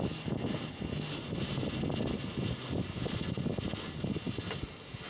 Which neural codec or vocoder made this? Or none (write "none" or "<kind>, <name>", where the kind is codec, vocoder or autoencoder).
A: none